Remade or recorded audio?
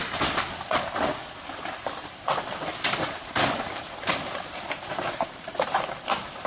remade